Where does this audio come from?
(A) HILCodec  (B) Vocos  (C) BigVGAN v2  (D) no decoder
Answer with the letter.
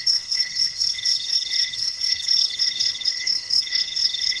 A